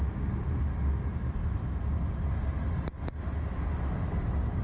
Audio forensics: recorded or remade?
recorded